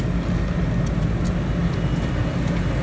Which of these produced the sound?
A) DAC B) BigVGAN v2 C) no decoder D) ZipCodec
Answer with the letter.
C